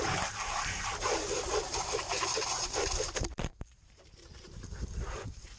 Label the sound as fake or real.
fake